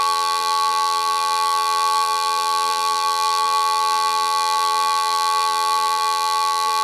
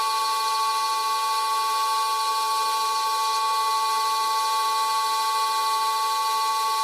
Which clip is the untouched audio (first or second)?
second